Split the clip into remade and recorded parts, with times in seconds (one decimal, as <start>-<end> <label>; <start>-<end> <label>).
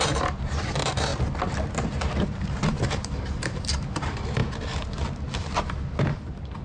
0.0-1.1 remade; 1.1-1.9 recorded; 1.9-4.4 remade; 4.4-6.1 recorded; 6.1-6.6 remade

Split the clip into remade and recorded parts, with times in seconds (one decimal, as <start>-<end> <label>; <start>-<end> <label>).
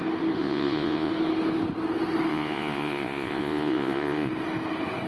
0.0-0.4 recorded; 0.4-1.1 remade; 1.1-2.3 recorded; 2.3-4.3 remade; 4.3-5.1 recorded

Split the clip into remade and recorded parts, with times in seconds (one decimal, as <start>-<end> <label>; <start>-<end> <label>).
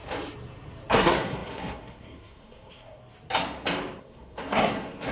0.0-0.9 recorded; 0.9-3.0 remade; 3.0-4.0 recorded; 4.0-5.1 remade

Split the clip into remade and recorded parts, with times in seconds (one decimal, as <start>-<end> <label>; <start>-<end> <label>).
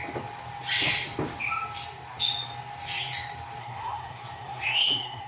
0.0-3.6 recorded; 3.6-5.3 remade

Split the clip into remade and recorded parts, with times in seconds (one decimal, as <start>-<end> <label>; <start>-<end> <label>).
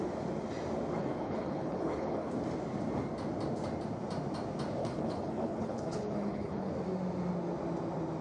0.0-1.0 recorded; 1.0-2.3 remade; 2.3-4.8 recorded; 4.8-6.7 remade; 6.7-8.2 recorded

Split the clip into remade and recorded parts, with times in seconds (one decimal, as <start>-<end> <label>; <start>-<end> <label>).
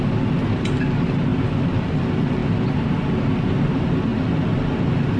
0.0-5.2 recorded